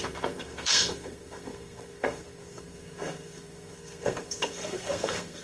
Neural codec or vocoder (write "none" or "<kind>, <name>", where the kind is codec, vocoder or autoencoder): codec, SNAC